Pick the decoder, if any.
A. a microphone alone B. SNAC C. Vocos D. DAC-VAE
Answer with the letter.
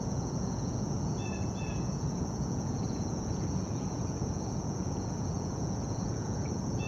C